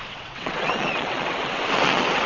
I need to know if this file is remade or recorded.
remade